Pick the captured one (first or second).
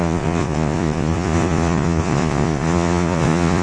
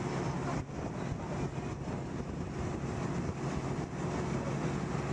second